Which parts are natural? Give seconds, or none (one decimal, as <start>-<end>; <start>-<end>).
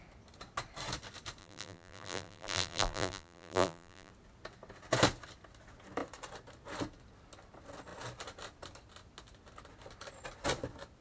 0.0-1.4; 4.1-11.0